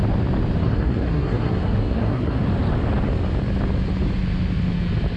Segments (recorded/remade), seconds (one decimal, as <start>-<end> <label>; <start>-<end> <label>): 0.0-0.6 recorded; 0.6-2.4 remade; 2.4-5.2 recorded